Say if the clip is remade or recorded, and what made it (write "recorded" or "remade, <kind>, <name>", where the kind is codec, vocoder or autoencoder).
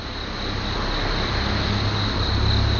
recorded